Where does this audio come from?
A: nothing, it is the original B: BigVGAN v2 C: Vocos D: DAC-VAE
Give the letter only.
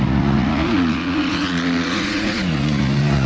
C